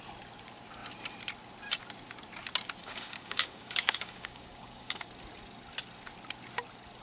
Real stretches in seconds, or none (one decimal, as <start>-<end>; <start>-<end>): 0.0-2.8; 5.1-7.0